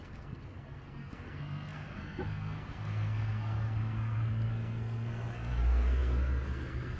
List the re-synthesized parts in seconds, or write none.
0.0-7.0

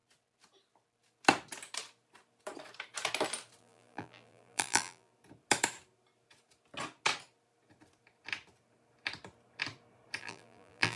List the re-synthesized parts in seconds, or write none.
3.6-5.1; 10.2-11.0

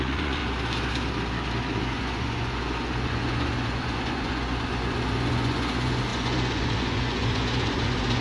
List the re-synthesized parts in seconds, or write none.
0.0-0.4; 1.8-8.2

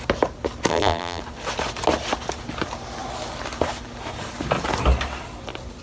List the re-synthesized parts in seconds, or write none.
0.7-1.2